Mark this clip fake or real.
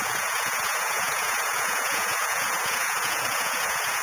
fake